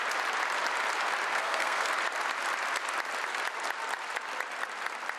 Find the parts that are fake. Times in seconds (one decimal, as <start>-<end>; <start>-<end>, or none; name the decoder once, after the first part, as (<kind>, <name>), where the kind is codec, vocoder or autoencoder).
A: 1.3-1.9 (codec, SNAC)